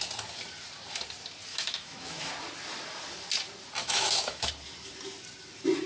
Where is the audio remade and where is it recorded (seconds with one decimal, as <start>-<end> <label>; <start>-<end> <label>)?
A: 0.0-1.5 recorded; 1.5-2.3 remade; 2.3-3.8 recorded; 3.8-4.5 remade; 4.5-5.9 recorded